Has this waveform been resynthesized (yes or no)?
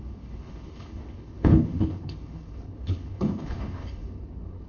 yes